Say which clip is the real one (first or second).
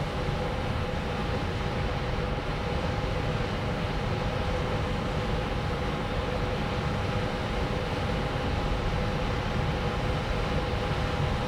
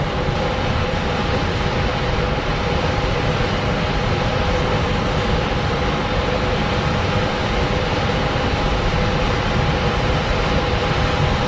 first